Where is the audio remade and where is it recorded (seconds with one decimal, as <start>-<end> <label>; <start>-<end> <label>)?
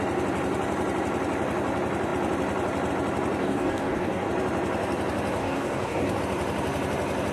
0.0-3.4 recorded; 3.4-4.3 remade; 4.3-5.4 recorded; 5.4-6.2 remade; 6.2-7.3 recorded